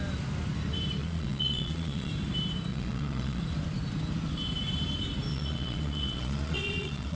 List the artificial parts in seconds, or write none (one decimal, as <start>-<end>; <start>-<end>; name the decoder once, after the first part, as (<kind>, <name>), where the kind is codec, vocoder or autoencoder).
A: 1.0-2.1 (vocoder, Vocos); 2.7-3.4; 5.3-7.2